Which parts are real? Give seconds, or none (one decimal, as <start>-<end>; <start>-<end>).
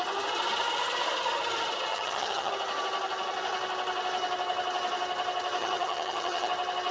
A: 0.0-1.9; 2.5-5.6; 6.5-6.9